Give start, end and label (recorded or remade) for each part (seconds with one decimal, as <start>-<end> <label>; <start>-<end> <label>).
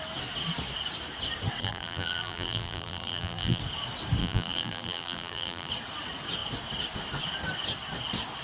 0.0-1.6 recorded; 1.6-3.6 remade; 3.6-4.2 recorded; 4.2-5.7 remade; 5.7-8.4 recorded